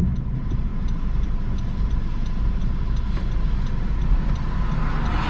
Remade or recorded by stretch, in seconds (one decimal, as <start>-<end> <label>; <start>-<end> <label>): 0.0-5.3 recorded